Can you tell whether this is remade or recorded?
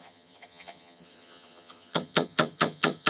remade